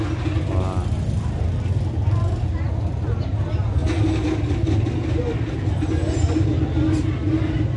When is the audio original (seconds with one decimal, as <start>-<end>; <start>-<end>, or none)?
0.0-7.8